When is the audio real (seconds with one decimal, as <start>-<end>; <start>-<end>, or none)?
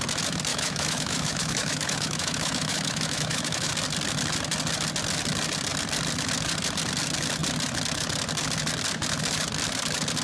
0.0-0.5; 3.7-10.2